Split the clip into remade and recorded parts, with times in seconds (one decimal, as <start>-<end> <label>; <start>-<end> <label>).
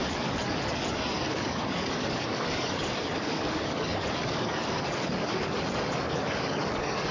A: 0.0-7.1 remade